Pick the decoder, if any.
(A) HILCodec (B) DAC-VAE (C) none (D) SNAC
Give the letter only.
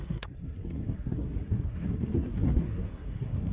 D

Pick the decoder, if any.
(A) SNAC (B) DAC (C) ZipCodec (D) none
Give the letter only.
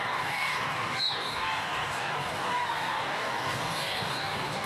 B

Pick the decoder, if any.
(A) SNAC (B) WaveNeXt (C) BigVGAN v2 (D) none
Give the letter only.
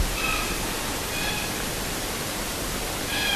D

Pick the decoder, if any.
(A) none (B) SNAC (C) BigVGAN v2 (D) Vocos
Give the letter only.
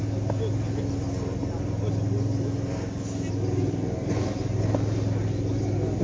A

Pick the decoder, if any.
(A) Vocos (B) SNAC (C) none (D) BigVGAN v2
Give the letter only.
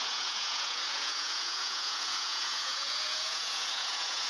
A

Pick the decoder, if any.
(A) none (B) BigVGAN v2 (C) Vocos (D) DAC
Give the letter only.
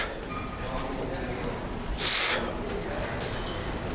A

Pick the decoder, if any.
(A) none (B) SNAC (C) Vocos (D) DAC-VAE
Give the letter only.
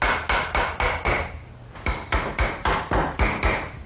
A